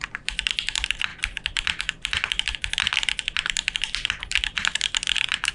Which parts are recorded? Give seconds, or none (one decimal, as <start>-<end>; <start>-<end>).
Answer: none